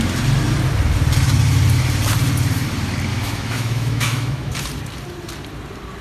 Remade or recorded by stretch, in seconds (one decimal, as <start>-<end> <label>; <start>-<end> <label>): 0.0-3.1 recorded; 3.1-4.5 remade; 4.5-6.0 recorded